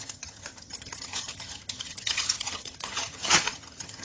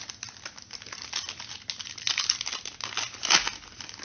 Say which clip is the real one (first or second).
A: second